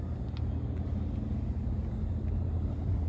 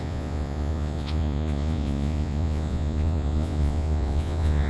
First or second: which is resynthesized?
second